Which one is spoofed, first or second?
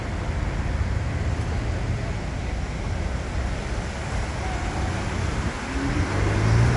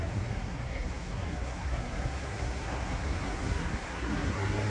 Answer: second